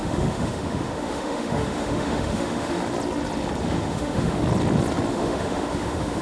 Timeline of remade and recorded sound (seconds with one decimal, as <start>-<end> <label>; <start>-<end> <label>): 0.0-2.8 remade; 2.8-3.6 recorded; 3.6-4.4 remade; 4.4-5.1 recorded; 5.1-6.2 remade